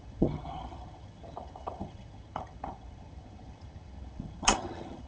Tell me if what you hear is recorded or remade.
remade